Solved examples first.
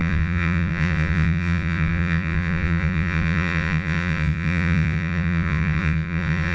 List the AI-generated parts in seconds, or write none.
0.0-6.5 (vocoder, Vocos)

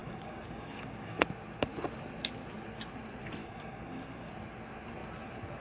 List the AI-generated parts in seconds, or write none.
0.0-1.2 (codec, DAC); 3.4-4.3

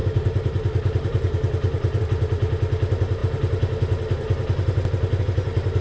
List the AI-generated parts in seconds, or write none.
0.0-2.0 (vocoder, BigVGAN v2)

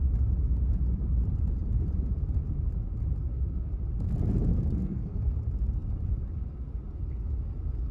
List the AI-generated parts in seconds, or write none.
3.2-3.7 (codec, SNAC); 4.5-5.3

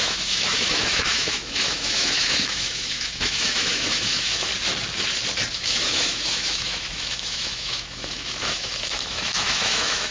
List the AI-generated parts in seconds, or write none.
0.0-4.5 (autoencoder, DAC-VAE); 5.5-10.1

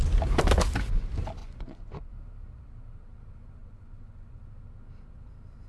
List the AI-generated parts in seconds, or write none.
1.4-2.1 (vocoder, Vocos); 3.6-4.4